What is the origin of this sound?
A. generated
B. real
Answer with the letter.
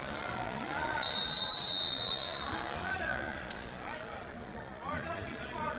A